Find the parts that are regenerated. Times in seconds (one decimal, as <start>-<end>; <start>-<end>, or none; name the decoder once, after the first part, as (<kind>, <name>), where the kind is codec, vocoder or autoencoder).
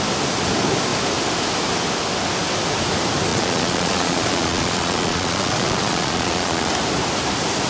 3.3-6.7 (vocoder, Vocos)